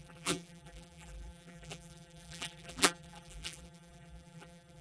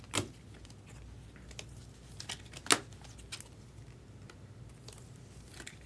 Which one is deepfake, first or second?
first